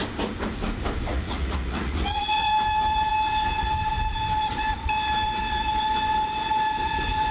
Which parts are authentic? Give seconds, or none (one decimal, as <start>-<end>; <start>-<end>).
0.0-1.1; 2.5-7.3